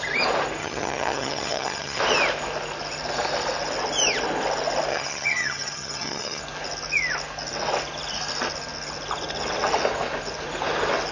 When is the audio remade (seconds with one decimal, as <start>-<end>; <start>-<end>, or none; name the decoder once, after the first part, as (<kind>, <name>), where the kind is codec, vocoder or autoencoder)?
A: 0.6-2.0 (vocoder, HiFi-GAN); 4.9-6.4